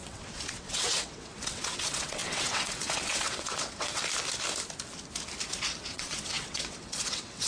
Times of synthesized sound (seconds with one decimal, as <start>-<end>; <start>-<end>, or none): 0.0-4.0; 5.9-7.5